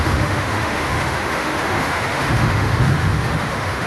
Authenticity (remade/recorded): remade